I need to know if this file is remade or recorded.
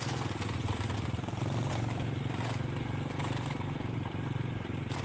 recorded